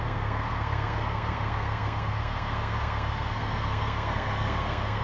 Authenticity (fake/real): fake